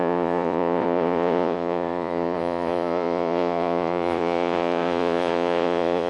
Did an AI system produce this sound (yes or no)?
yes